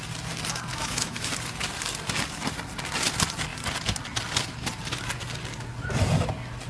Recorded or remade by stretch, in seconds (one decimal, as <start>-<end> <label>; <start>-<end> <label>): 0.0-0.7 recorded; 0.7-1.3 remade; 1.3-6.7 recorded